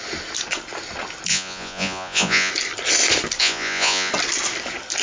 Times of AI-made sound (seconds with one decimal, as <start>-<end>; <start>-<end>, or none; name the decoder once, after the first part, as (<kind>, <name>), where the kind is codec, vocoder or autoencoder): 1.3-2.5 (vocoder, Vocos); 3.4-4.1